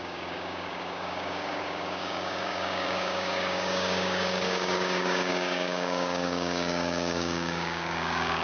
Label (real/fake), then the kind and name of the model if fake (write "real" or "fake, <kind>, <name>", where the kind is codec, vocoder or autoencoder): fake, codec, DAC